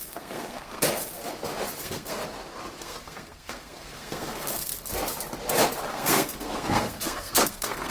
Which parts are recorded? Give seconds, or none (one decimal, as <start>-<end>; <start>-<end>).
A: 1.2-1.8; 2.2-2.8; 4.7-5.9